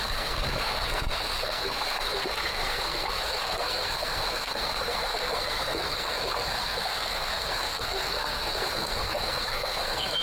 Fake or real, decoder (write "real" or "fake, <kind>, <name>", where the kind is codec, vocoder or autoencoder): fake, codec, SNAC